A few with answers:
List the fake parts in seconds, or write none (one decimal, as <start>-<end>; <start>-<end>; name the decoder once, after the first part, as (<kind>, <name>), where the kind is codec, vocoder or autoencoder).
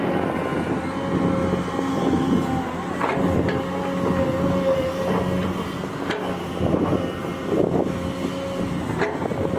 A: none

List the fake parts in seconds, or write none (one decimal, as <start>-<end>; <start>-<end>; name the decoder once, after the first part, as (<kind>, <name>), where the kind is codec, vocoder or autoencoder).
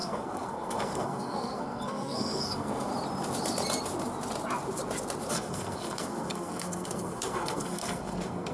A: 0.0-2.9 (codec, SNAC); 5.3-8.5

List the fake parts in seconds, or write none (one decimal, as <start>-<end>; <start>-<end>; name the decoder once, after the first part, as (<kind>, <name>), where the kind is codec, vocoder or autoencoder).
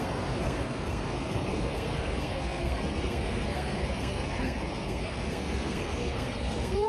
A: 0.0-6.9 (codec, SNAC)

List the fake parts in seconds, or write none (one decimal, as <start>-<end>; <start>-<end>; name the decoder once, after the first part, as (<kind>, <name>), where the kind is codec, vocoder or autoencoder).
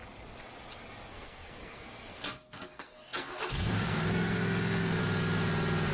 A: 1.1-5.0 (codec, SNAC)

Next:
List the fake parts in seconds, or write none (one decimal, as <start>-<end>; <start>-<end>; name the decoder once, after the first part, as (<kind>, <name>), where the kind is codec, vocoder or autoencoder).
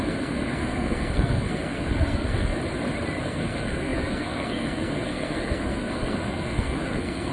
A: 0.0-2.6 (codec, SNAC); 3.2-7.3